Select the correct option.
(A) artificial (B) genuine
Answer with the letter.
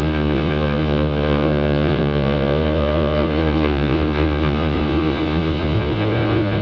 A